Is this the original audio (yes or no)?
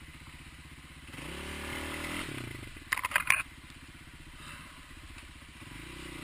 yes